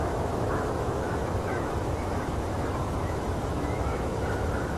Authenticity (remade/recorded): remade